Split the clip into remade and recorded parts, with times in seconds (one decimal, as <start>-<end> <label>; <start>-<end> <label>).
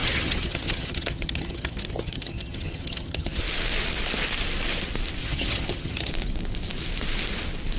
0.0-3.4 remade; 3.4-5.2 recorded; 5.2-6.1 remade; 6.1-7.8 recorded